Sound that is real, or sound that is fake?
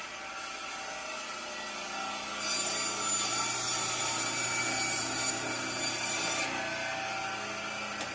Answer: real